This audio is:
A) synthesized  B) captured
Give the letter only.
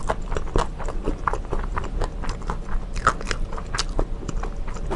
B